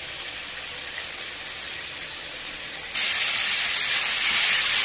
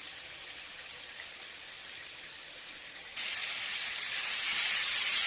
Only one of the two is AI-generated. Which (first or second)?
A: second